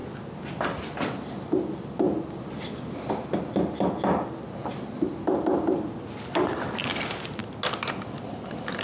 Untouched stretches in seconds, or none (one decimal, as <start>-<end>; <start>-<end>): 0.0-8.8